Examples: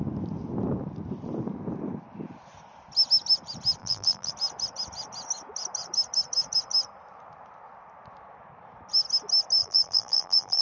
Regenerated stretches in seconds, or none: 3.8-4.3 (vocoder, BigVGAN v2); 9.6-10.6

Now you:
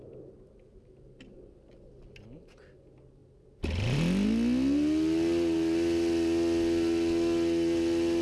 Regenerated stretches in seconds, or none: none

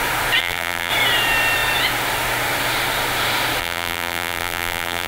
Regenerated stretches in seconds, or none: 0.4-0.9 (vocoder, BigVGAN v2); 3.6-5.1

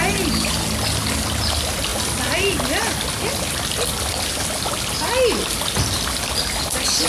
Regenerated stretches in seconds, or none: none

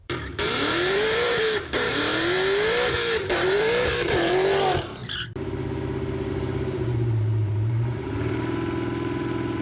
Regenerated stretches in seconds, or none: 0.0-5.0 (vocoder, BigVGAN v2); 6.3-9.6

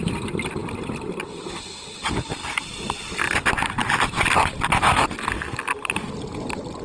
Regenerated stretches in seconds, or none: none

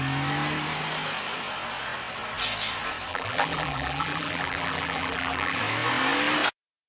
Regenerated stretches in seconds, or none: 3.1-5.6 (vocoder, BigVGAN v2)